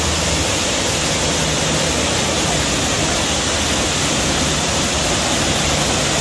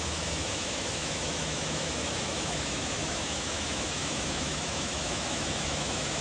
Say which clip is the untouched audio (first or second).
first